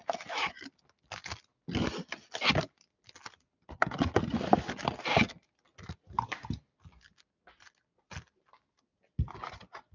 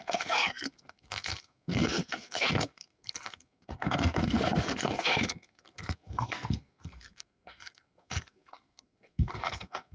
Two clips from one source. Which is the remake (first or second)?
second